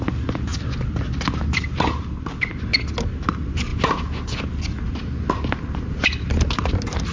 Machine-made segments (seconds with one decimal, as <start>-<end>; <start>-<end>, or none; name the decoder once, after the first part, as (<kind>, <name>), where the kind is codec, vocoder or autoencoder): none

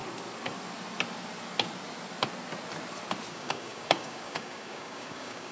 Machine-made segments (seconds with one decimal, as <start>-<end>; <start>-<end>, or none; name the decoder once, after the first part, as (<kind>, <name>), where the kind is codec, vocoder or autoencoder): 3.3-5.5 (codec, DAC)

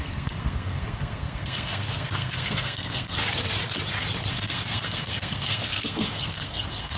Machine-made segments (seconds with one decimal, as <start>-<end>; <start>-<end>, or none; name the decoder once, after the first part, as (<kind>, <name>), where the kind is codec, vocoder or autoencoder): 0.0-3.2 (codec, SNAC); 4.3-7.0